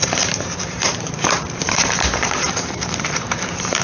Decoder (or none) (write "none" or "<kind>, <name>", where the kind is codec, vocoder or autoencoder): vocoder, BigVGAN v2